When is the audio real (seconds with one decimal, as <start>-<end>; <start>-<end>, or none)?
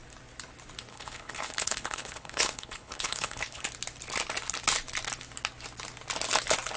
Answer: 0.0-0.9; 3.6-6.8